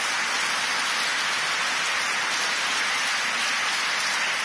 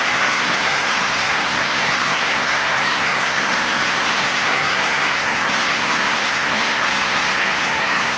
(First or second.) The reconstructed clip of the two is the second